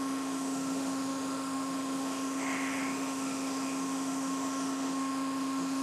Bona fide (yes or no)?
no